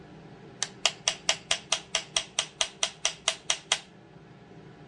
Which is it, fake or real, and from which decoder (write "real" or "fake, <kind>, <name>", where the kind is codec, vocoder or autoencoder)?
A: real